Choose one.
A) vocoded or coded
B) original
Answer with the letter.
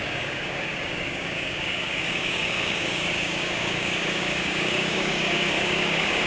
A